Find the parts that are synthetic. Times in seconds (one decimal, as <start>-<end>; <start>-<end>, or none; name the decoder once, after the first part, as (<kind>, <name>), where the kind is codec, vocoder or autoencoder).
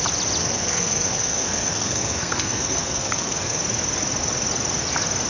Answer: 0.4-3.6 (codec, SNAC)